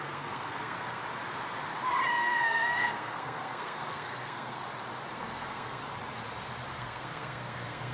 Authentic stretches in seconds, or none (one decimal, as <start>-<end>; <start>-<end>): 1.0-2.1; 4.6-5.1; 5.8-6.7